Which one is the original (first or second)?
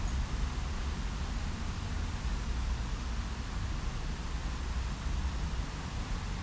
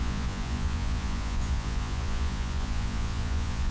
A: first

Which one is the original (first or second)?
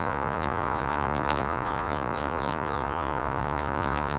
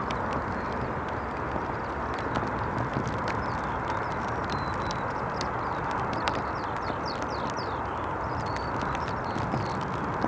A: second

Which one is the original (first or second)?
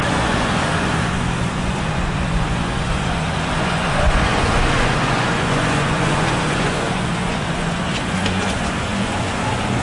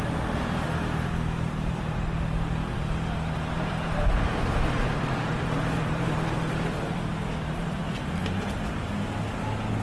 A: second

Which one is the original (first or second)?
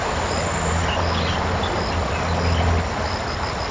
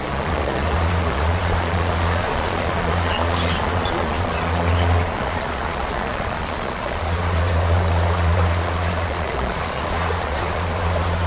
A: first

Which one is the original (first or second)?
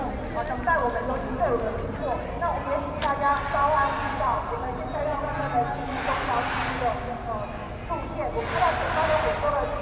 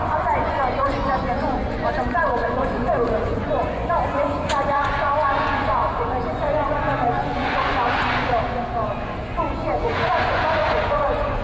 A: first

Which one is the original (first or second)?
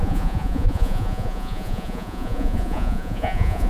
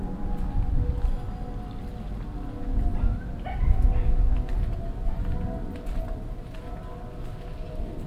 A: second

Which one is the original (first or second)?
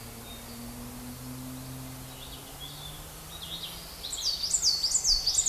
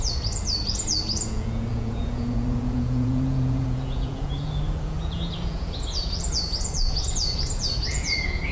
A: first